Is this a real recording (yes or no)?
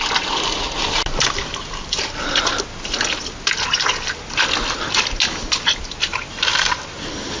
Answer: yes